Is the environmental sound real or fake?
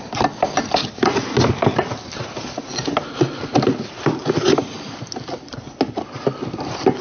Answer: real